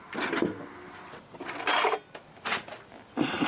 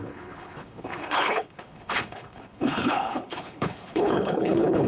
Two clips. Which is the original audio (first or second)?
first